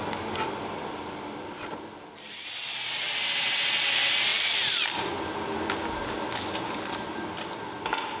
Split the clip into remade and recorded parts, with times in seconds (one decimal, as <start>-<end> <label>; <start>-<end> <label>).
0.0-8.2 recorded